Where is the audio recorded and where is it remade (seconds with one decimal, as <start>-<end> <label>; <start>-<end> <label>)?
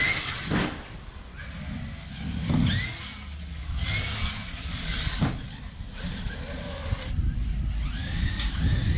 0.0-8.0 recorded; 8.0-8.5 remade; 8.5-9.0 recorded